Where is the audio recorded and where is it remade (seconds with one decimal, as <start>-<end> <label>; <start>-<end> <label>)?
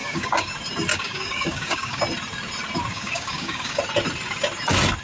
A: 0.0-0.5 remade; 0.5-0.9 recorded; 0.9-2.0 remade; 2.0-2.9 recorded; 2.9-3.8 remade; 3.8-5.0 recorded